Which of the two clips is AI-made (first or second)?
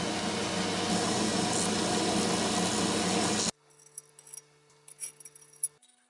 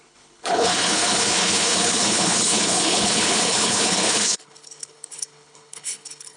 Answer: second